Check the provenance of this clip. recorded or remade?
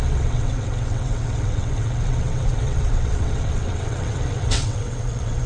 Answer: remade